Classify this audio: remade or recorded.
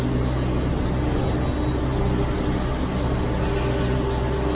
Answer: recorded